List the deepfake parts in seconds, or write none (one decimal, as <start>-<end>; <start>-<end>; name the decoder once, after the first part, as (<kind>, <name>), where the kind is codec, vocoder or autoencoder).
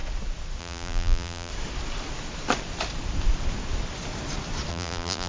0.6-1.5 (vocoder, BigVGAN v2); 4.7-5.3